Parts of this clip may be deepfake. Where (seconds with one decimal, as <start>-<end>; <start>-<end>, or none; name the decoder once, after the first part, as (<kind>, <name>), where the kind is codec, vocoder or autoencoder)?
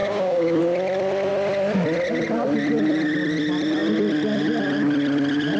0.0-0.6 (codec, DAC)